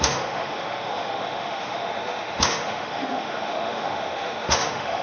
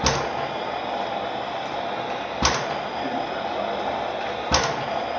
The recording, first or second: second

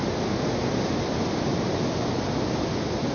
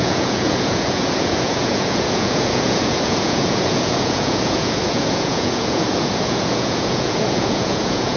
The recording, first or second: first